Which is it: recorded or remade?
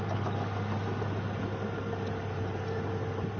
recorded